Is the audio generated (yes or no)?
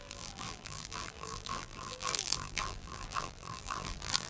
yes